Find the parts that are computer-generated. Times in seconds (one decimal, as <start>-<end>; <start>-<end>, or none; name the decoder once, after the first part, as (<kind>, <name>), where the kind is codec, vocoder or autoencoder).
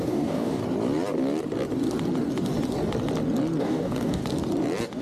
0.0-0.6 (codec, DAC); 3.6-4.2